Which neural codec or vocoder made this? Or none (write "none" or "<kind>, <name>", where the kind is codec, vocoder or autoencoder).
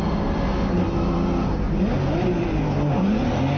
none